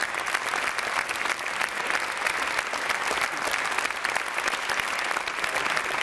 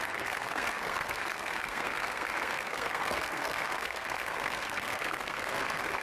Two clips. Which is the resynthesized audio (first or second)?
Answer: second